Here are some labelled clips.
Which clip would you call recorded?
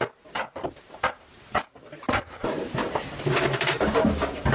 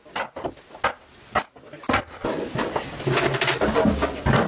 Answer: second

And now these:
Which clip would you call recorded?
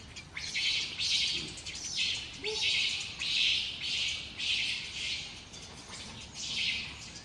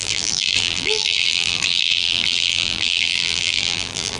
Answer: first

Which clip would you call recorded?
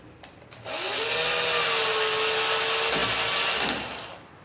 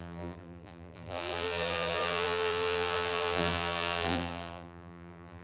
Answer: first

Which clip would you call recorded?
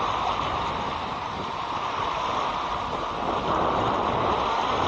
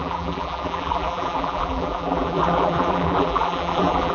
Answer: first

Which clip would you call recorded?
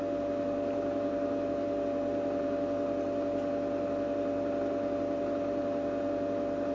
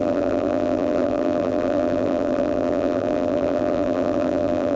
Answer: first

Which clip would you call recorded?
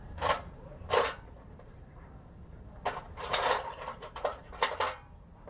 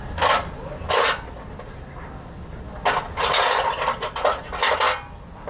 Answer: second